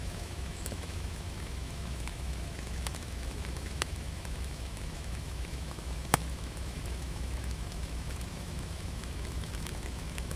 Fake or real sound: fake